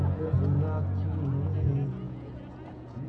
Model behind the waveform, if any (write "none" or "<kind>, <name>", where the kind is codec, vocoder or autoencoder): vocoder, Vocos